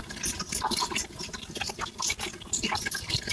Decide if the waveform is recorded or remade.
recorded